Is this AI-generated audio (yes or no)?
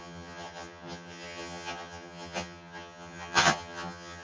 yes